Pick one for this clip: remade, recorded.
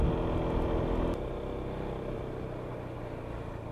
recorded